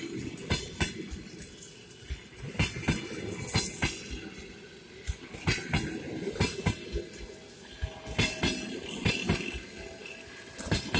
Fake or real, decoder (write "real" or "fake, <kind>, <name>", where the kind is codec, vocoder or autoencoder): real